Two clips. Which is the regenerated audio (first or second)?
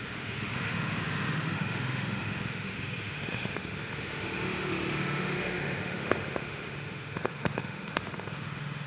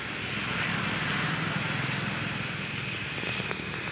first